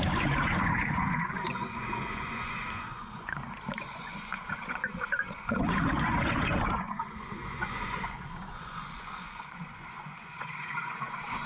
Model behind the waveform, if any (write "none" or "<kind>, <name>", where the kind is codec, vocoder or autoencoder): vocoder, Vocos